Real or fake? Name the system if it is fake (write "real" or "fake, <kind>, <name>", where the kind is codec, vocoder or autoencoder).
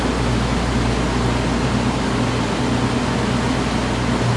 real